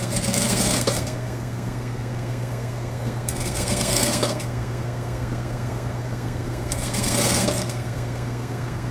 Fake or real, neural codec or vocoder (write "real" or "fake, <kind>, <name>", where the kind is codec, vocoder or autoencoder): fake, codec, SNAC